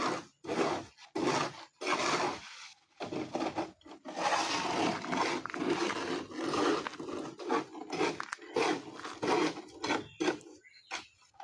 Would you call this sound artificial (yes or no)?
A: no